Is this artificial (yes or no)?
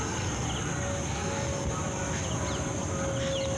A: no